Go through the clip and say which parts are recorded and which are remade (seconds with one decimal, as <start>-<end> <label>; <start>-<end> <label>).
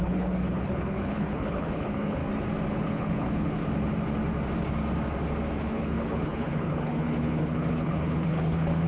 0.0-2.2 remade; 2.2-2.7 recorded; 2.7-3.6 remade; 3.6-5.6 recorded; 5.6-8.9 remade